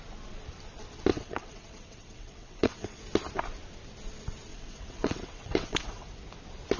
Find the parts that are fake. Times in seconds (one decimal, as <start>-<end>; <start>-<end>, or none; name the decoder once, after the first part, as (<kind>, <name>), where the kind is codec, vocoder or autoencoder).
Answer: 1.1-3.0 (vocoder, WaveNeXt); 4.5-6.2

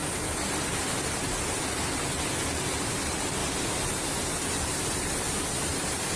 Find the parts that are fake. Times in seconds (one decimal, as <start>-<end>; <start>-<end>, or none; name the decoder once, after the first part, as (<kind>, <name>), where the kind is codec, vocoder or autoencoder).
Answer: none

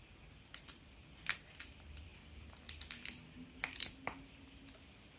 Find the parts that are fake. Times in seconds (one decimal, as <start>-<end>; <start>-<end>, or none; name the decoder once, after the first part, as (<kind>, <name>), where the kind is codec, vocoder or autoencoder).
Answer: 0.0-2.1 (vocoder, BigVGAN v2); 3.9-5.2

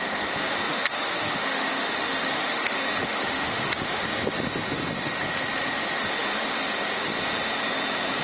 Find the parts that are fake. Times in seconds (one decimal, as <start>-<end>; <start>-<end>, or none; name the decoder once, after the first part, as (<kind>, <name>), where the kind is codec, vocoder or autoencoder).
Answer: 0.7-4.0 (autoencoder, DAC-VAE)

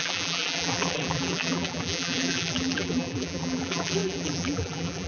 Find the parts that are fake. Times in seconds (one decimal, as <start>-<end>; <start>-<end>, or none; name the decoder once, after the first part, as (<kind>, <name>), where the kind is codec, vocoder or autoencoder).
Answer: 0.0-5.1 (vocoder, BigVGAN v2)

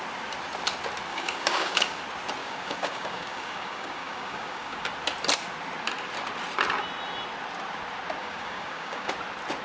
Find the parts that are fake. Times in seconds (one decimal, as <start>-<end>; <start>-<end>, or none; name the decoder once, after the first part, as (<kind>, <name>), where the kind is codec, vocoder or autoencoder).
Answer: 1.1-2.0 (codec, DAC); 2.4-4.9; 8.2-9.1

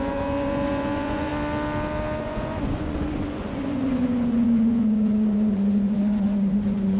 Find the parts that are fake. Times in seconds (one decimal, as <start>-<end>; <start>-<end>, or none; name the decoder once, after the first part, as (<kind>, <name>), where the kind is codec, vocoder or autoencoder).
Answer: 0.0-1.3 (vocoder, Vocos); 2.2-7.0

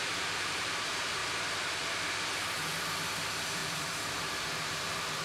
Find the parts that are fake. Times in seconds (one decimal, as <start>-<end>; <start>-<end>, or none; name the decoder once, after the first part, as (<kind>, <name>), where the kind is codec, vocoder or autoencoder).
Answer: 0.0-1.2 (vocoder, BigVGAN v2); 2.9-5.2